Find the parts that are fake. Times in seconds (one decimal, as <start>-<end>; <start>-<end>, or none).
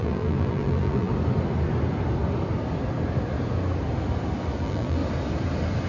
0.0-1.1; 4.6-5.0